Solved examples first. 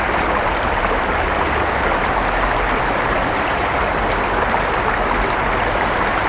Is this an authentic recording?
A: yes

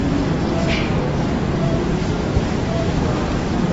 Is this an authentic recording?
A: yes